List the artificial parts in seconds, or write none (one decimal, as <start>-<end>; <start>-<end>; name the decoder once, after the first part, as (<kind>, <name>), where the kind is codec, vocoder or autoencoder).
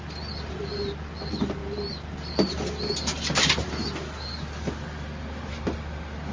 none